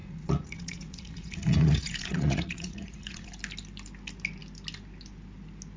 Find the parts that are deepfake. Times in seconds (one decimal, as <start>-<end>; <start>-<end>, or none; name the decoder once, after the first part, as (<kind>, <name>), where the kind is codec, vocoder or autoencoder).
0.0-3.3 (vocoder, Vocos)